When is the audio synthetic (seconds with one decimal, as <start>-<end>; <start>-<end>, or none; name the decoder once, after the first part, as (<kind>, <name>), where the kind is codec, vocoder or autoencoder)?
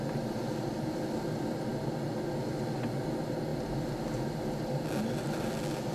none